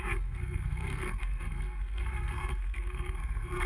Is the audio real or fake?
fake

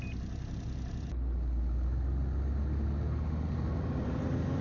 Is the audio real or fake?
real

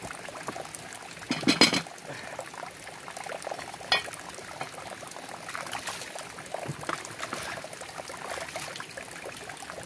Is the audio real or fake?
real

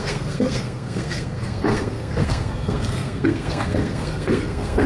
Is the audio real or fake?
fake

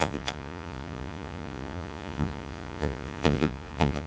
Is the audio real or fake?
fake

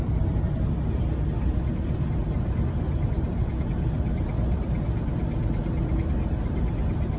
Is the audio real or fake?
real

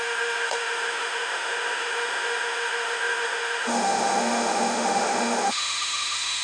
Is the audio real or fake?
fake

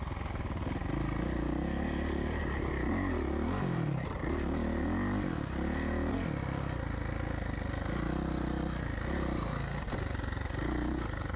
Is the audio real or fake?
real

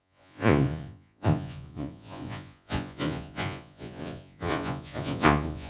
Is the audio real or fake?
fake